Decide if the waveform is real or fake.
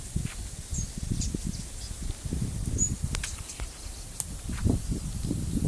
real